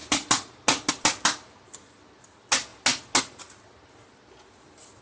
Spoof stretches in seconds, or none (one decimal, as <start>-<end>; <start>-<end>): none